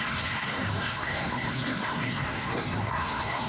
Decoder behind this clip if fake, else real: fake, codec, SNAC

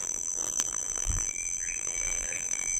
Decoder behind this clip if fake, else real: fake, vocoder, BigVGAN v2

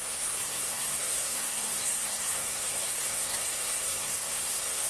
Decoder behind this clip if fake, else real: fake, codec, SNAC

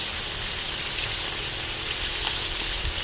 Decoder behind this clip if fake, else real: real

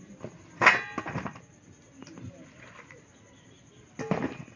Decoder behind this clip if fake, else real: real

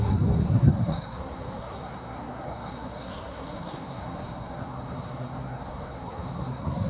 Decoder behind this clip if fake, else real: fake, codec, SNAC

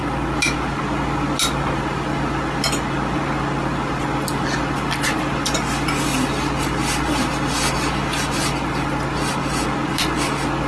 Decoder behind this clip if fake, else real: real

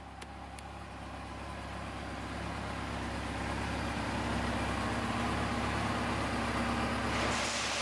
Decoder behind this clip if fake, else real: real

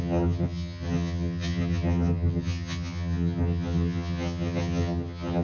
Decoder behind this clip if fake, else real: fake, vocoder, HiFi-GAN